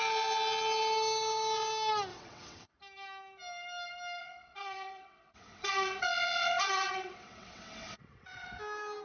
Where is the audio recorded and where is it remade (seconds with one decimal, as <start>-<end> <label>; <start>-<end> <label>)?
0.0-2.1 recorded; 2.1-2.8 remade; 2.8-4.2 recorded; 4.2-8.6 remade; 8.6-9.0 recorded